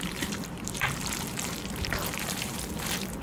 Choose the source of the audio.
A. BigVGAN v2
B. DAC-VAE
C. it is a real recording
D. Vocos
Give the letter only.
A